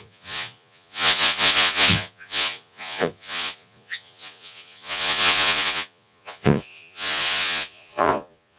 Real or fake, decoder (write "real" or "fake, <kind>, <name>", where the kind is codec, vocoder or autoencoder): fake, vocoder, Vocos